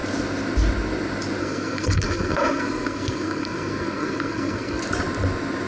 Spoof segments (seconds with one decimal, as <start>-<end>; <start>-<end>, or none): 1.4-4.8